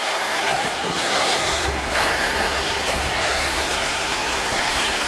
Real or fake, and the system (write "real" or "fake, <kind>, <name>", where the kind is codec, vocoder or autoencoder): fake, codec, SNAC